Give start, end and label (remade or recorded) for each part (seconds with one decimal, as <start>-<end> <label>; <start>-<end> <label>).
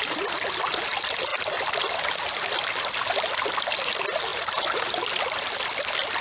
0.0-6.2 recorded